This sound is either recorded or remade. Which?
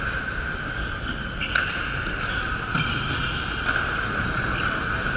recorded